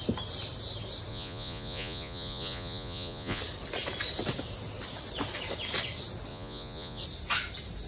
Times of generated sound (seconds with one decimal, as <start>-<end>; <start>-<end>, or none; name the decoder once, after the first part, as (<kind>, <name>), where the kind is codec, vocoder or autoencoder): 1.1-3.4 (vocoder, Vocos); 6.3-7.0